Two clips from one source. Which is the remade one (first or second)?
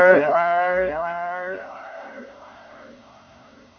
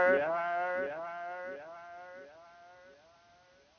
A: first